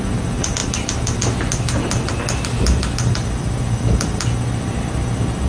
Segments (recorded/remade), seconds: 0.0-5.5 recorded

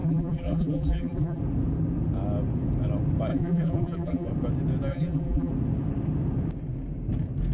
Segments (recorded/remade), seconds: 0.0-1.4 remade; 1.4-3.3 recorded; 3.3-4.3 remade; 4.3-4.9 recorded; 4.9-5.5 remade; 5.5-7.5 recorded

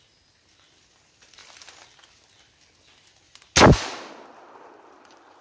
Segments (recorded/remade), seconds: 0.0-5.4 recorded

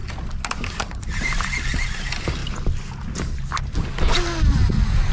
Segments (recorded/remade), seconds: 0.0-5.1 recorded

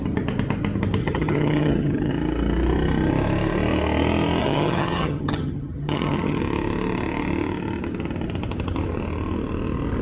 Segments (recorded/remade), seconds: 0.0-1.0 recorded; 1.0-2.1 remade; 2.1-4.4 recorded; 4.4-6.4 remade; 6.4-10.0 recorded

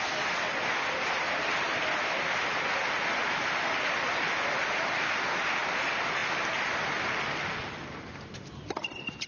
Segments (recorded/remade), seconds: 0.0-9.3 recorded